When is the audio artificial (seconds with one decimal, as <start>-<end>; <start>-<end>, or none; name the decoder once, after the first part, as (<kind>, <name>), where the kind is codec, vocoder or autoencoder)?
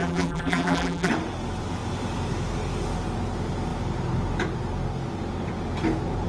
0.0-1.1 (vocoder, BigVGAN v2)